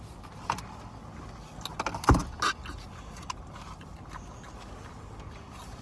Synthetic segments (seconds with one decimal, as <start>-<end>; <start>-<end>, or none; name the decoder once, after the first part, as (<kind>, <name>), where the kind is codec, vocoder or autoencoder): none